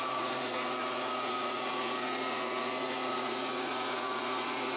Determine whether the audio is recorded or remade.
remade